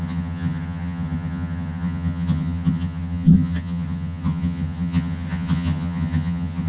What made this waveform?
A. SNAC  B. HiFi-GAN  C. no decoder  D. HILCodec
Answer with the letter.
B